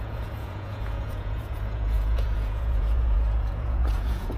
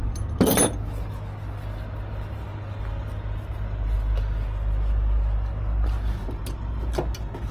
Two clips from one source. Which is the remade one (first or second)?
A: first